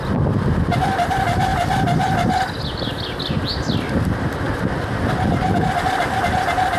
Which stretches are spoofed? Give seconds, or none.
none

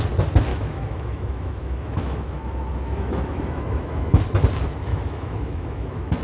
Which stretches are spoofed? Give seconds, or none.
0.5-4.2 (autoencoder, DAC-VAE); 4.9-6.2

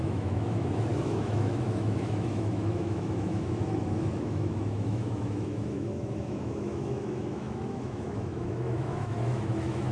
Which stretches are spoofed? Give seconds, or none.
0.0-9.9 (autoencoder, DAC-VAE)